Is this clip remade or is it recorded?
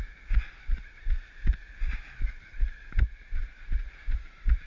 recorded